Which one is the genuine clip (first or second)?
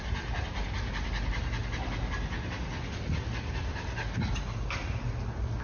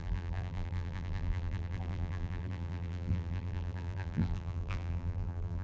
first